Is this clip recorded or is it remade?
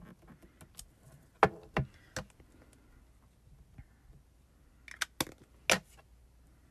recorded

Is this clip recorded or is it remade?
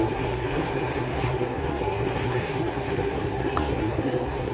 remade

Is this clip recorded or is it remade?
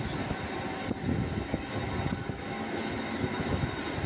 recorded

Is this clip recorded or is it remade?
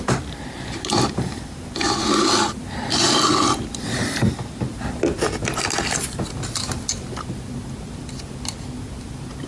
recorded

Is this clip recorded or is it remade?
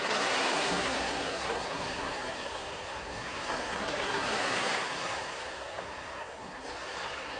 remade